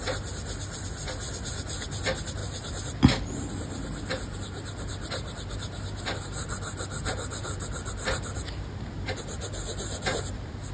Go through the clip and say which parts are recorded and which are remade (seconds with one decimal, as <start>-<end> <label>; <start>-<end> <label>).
0.0-10.7 recorded